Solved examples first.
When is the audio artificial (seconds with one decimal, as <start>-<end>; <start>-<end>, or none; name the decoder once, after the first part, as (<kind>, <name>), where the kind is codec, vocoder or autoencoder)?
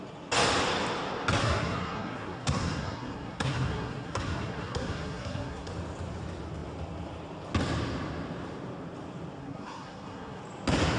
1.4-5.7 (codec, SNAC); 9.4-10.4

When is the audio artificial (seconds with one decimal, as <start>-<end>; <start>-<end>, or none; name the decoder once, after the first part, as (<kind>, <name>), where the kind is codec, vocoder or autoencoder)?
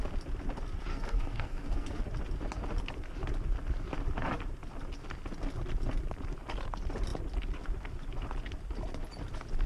0.9-2.0 (codec, SNAC)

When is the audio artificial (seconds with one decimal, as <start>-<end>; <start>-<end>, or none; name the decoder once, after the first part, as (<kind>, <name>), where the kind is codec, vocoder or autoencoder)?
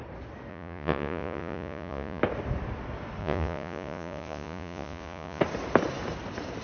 0.5-2.2 (vocoder, Vocos); 3.2-5.4